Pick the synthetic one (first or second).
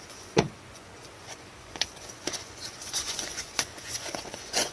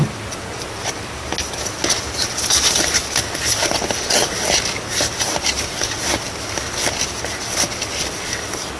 first